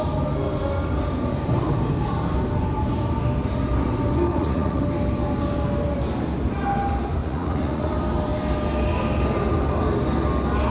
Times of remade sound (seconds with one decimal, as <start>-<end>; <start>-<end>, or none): 4.3-4.8; 7.2-7.9